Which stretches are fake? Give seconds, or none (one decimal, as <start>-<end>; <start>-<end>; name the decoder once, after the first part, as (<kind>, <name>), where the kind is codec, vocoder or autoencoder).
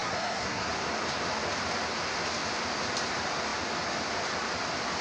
0.0-0.7 (codec, SNAC)